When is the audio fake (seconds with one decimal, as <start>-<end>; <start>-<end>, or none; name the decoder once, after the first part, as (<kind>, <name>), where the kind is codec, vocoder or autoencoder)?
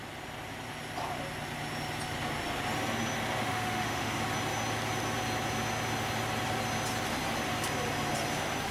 3.4-4.2 (autoencoder, DAC-VAE)